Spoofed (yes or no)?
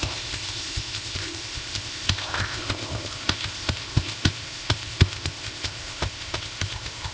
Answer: yes